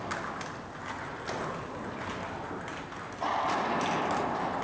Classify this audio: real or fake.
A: real